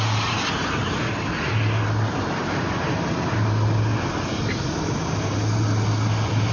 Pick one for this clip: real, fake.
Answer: real